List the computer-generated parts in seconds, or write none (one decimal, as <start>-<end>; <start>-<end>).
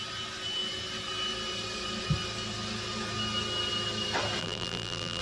4.4-5.2